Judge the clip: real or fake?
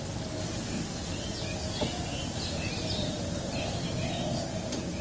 real